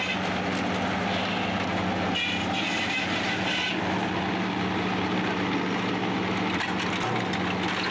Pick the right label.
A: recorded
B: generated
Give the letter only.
A